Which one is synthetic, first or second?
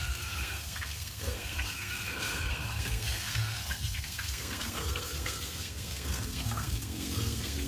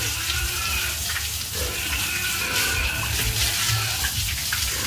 first